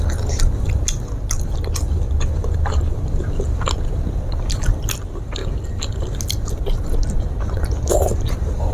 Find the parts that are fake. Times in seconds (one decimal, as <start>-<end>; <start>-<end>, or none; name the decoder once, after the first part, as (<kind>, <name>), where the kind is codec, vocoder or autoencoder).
none